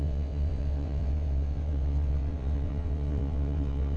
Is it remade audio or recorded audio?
remade